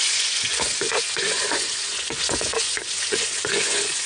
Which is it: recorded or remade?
remade